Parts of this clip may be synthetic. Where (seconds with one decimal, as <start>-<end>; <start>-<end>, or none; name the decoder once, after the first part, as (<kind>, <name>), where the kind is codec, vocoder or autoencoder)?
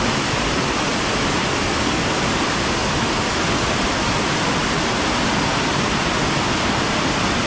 none